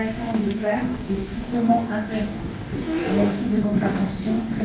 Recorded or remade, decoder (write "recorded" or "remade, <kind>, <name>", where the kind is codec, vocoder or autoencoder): remade, codec, DAC